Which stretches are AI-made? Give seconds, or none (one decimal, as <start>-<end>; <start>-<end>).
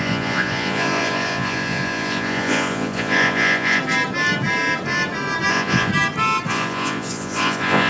0.0-3.8; 5.5-5.9; 6.5-7.9